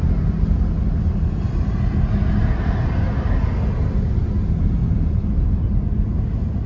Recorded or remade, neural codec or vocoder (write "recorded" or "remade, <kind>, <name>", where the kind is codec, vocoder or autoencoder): recorded